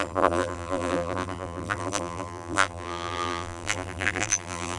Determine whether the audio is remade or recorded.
remade